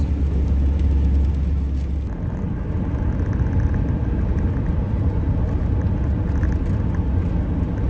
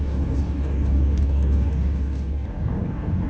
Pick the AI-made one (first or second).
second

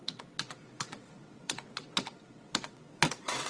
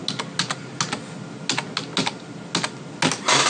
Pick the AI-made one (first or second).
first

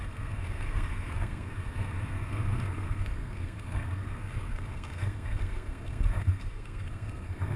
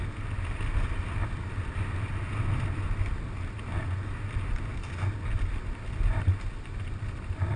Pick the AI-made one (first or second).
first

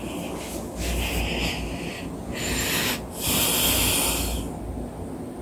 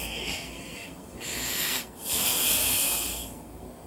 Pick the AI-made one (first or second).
second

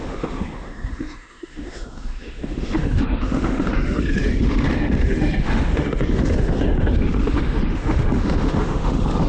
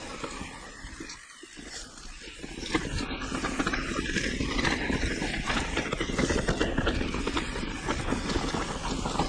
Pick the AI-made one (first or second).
first